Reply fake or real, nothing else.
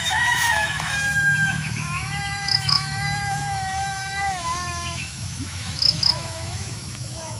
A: fake